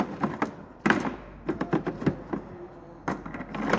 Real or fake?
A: real